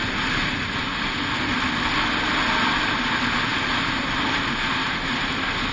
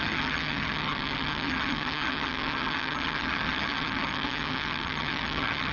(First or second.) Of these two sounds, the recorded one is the first